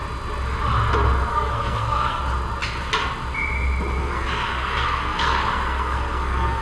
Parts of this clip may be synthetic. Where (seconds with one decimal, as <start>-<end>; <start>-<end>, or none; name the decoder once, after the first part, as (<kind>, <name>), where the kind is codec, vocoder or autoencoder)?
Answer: 1.3-2.2 (codec, SNAC); 4.0-6.6